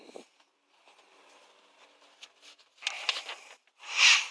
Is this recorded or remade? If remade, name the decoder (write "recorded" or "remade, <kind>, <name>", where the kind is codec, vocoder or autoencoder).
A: recorded